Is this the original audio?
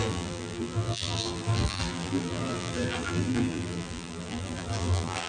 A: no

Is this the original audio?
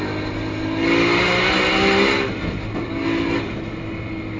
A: yes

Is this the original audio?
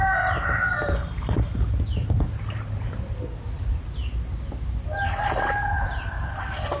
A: yes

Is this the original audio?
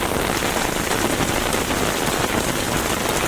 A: yes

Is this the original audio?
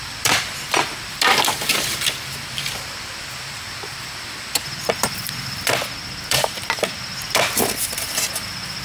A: no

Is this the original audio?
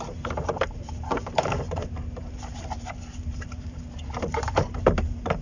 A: no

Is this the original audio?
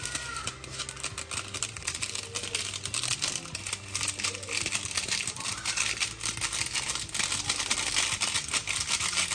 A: yes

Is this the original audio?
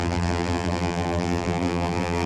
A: no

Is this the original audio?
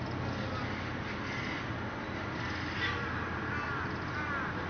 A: yes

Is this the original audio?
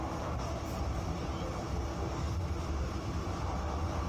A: yes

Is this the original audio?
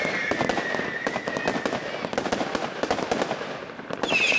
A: yes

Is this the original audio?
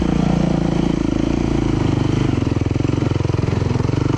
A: no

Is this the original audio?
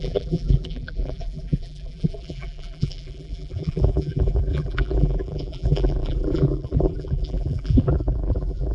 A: no